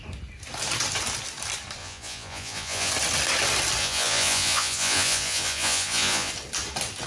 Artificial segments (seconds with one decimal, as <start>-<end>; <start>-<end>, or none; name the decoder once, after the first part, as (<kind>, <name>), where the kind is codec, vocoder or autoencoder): 1.8-2.9 (vocoder, Vocos); 3.8-6.3